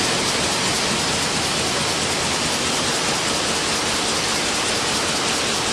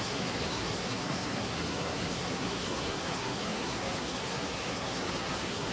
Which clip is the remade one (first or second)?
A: second